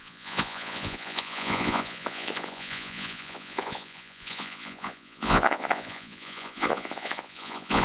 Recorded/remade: remade